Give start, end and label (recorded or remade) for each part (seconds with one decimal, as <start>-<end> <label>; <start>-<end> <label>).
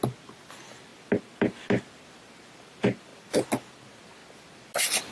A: 0.0-5.1 recorded